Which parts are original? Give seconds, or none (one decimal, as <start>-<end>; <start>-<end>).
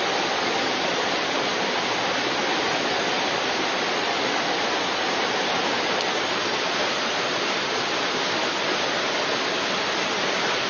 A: 0.0-10.7